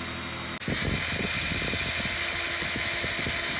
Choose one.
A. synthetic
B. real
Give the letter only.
B